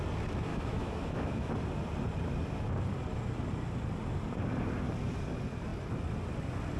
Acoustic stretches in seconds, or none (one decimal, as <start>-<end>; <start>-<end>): 0.0-0.5; 1.5-6.8